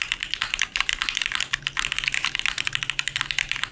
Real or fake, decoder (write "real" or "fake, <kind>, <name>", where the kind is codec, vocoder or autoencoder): fake, vocoder, BigVGAN v2